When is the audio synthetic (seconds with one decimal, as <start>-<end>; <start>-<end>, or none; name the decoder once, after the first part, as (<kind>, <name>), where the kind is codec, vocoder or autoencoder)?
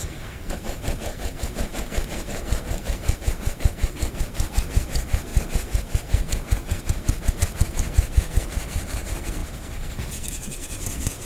0.0-11.3 (codec, SNAC)